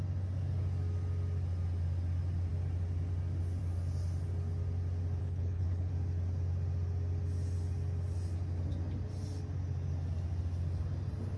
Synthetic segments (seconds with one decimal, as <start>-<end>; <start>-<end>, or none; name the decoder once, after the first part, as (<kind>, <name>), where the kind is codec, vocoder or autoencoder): 5.2-5.9 (codec, HILCodec)